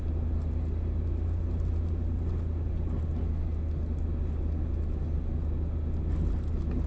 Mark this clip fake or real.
real